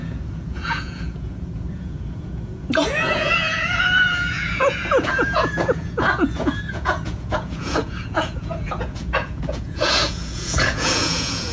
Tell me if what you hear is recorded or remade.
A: remade